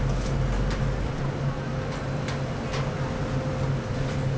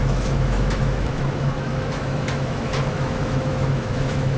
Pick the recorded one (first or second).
first